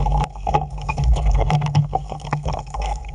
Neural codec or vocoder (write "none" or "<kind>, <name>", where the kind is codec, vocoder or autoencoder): codec, SNAC